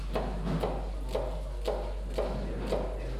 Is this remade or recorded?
recorded